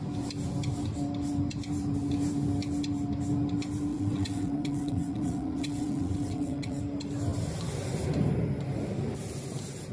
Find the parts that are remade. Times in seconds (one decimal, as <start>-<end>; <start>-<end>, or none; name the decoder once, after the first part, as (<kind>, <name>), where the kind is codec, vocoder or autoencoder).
3.9-6.8 (vocoder, WaveNeXt)